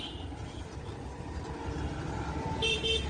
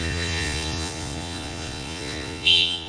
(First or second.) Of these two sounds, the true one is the first